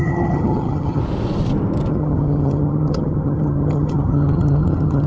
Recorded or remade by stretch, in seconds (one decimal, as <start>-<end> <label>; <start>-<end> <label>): 0.0-1.0 remade; 1.0-1.9 recorded; 1.9-5.1 remade